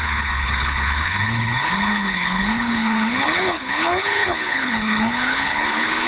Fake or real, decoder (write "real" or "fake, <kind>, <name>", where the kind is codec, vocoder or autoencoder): fake, codec, HILCodec